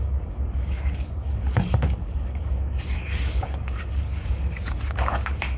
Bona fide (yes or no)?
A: no